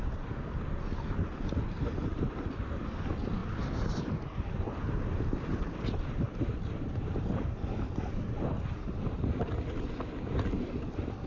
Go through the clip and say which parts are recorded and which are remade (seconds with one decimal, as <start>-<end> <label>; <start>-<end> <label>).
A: 0.0-11.3 recorded